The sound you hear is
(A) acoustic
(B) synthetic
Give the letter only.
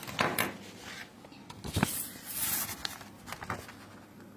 A